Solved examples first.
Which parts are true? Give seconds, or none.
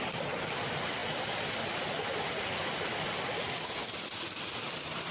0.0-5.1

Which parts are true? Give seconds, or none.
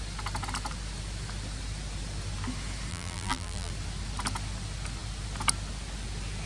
0.0-2.9; 3.7-6.5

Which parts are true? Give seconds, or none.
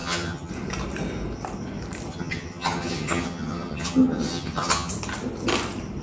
0.5-2.1; 4.9-6.0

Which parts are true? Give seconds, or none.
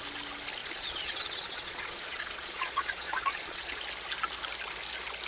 0.0-0.6; 3.8-5.3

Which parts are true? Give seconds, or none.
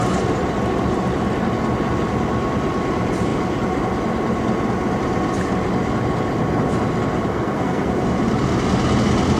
0.0-7.3; 7.9-9.4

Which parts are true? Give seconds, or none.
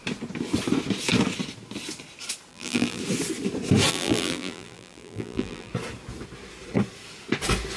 0.0-2.5; 3.0-3.9; 5.7-7.8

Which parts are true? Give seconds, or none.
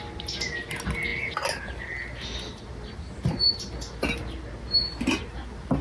0.0-5.8